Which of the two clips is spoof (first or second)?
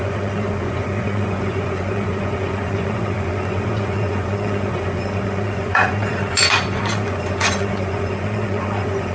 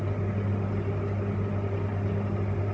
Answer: first